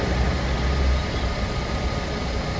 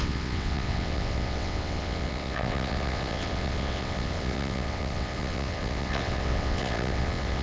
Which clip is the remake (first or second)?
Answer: second